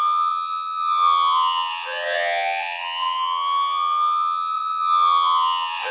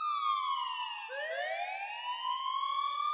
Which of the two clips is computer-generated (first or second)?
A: first